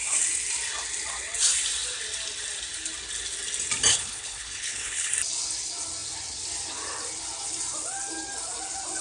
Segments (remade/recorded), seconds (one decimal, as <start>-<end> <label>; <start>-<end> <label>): 0.0-3.9 recorded; 3.9-5.1 remade; 5.1-9.0 recorded